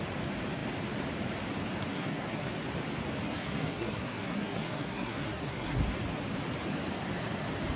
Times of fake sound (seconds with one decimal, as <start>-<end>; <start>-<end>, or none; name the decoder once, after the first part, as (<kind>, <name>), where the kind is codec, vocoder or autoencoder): 1.9-2.5 (codec, SNAC); 3.2-5.8

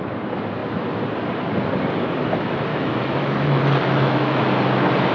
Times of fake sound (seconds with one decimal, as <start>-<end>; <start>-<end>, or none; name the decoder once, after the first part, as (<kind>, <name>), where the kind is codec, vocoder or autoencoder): 2.7-4.4 (autoencoder, DAC-VAE)

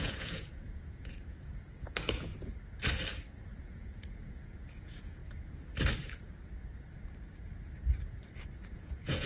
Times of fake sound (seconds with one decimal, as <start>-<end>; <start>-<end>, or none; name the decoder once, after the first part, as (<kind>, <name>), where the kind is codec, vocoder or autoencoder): 0.0-2.3 (vocoder, Vocos); 3.3-5.2; 8.7-9.3

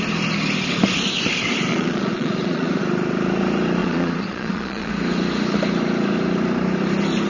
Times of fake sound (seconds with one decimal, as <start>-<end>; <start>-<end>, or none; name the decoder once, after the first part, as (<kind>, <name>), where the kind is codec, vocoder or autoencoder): 1.7-2.8 (vocoder, Vocos); 3.8-4.9

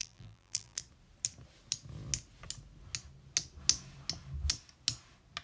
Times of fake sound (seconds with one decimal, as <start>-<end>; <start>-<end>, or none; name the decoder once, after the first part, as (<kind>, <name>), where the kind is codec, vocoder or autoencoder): 0.0-0.8 (vocoder, BigVGAN v2)

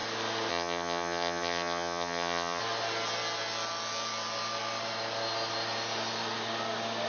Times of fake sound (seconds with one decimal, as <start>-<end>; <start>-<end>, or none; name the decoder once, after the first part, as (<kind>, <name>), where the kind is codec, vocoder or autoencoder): 0.5-2.6 (vocoder, HiFi-GAN)

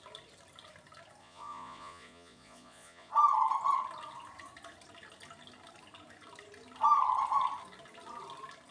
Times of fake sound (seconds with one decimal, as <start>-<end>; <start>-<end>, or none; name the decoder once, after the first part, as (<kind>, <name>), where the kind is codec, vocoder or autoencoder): 1.2-3.1 (vocoder, Vocos)

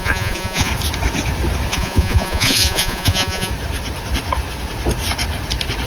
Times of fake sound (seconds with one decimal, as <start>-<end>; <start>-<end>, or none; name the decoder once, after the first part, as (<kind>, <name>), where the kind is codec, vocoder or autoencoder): 0.0-0.7 (vocoder, Vocos); 1.7-3.5